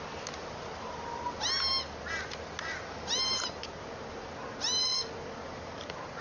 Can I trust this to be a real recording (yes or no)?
yes